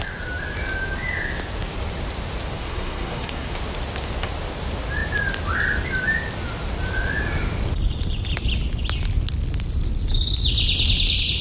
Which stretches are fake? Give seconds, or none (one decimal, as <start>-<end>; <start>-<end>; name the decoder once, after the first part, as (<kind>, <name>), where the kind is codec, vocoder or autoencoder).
2.6-3.5 (codec, SNAC)